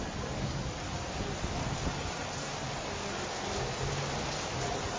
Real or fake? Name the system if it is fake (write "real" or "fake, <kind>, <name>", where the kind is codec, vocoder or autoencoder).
real